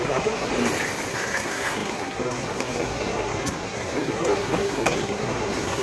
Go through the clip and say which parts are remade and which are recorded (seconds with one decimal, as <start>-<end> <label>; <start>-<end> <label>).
0.0-0.5 remade; 0.5-1.1 recorded; 1.1-5.8 remade